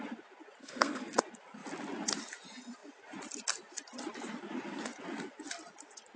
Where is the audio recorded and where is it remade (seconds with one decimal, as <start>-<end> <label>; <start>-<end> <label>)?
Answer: 0.0-0.6 recorded; 0.6-1.2 remade; 1.2-6.2 recorded